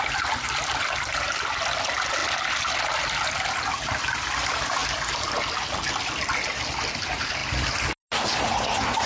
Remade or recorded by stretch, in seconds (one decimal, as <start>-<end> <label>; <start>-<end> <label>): 0.0-9.1 recorded